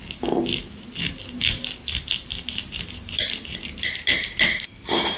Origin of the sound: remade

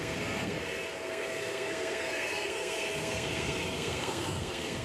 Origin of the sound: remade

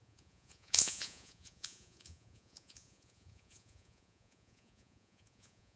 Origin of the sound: remade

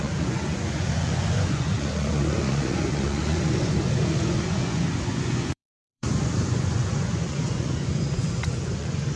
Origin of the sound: remade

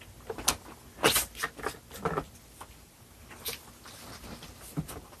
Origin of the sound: recorded